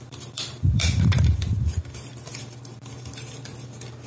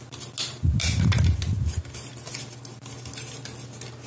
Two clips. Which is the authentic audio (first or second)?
second